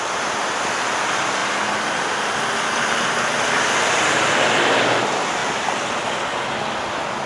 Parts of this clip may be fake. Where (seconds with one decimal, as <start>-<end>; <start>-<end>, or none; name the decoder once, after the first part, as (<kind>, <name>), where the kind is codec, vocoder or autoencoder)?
none